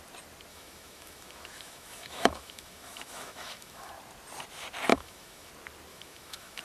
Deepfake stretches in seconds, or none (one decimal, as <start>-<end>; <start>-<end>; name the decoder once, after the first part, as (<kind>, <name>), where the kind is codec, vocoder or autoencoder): 0.5-3.9 (autoencoder, DAC-VAE); 4.9-5.5; 5.9-6.6